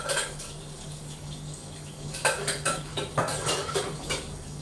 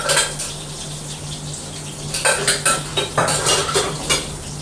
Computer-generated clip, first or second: first